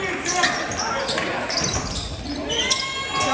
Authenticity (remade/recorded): recorded